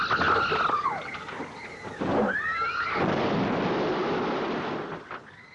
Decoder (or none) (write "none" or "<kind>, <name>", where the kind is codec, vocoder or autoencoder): none